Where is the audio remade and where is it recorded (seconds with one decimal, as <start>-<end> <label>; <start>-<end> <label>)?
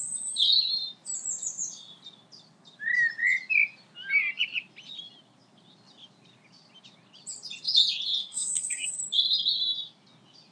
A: 0.0-8.2 recorded; 8.2-9.0 remade; 9.0-10.5 recorded